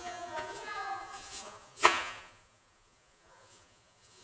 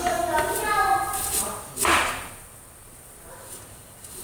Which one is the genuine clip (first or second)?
second